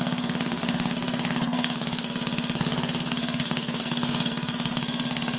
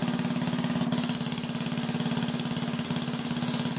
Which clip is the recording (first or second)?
second